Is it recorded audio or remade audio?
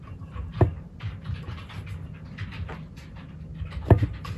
recorded